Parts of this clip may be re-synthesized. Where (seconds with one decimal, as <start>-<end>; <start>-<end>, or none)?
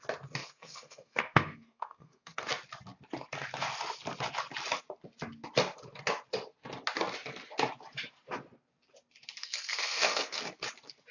0.4-2.4; 9.4-10.4